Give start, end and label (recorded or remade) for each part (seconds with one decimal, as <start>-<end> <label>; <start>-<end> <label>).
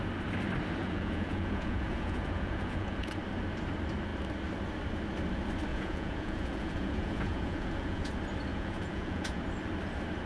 0.0-0.8 recorded; 0.8-3.2 remade; 3.2-5.7 recorded; 5.7-8.1 remade; 8.1-8.5 recorded; 8.5-9.4 remade; 9.4-10.3 recorded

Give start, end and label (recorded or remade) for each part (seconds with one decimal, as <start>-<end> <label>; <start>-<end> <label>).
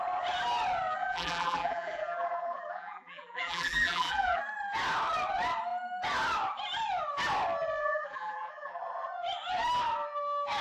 0.0-1.0 recorded; 1.0-4.4 remade; 4.4-7.8 recorded; 7.8-8.8 remade; 8.8-10.6 recorded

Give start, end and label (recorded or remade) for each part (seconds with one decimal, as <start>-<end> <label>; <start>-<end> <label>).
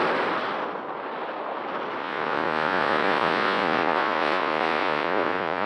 0.0-2.0 recorded; 2.0-5.7 remade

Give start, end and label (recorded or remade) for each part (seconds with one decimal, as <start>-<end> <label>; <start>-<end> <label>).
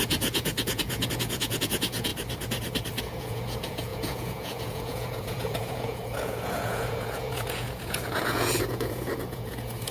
0.0-2.1 remade; 2.1-3.0 recorded; 3.0-9.9 remade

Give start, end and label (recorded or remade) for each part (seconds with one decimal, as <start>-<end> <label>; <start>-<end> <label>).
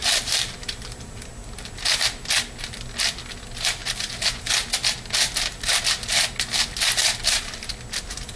0.0-1.3 remade; 1.3-3.8 recorded; 3.8-4.5 remade; 4.5-7.0 recorded; 7.0-7.7 remade; 7.7-8.4 recorded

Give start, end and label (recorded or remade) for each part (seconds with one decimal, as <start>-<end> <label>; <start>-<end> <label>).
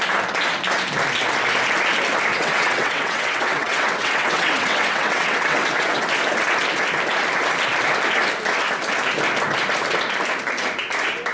0.0-2.3 recorded; 2.3-6.1 remade; 6.1-11.3 recorded